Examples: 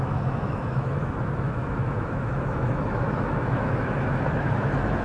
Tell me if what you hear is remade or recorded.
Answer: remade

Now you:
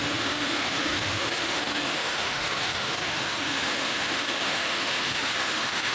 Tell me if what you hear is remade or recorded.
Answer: remade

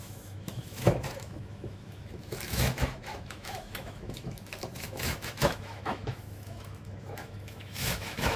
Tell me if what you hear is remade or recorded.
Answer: remade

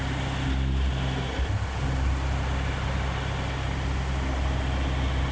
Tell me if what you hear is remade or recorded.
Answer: recorded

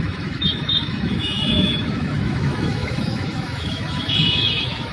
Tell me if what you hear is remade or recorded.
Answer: remade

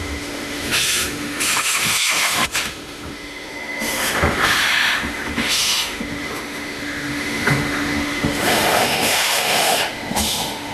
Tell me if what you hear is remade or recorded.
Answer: remade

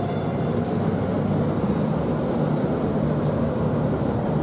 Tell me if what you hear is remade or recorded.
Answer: recorded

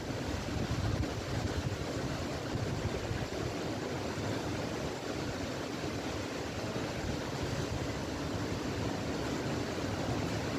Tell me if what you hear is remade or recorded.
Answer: recorded